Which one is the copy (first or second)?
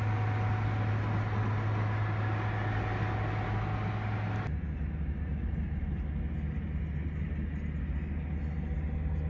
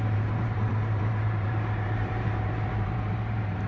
second